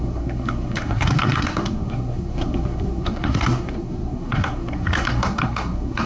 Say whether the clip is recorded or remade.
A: remade